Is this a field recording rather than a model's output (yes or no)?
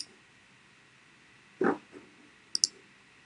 yes